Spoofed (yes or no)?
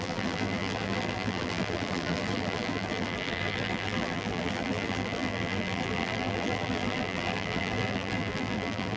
yes